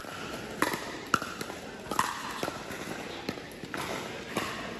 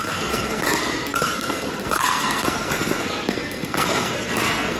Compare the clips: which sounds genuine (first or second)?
first